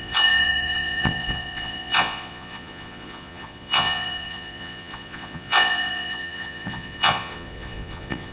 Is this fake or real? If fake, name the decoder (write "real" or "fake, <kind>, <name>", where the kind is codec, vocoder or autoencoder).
fake, vocoder, Vocos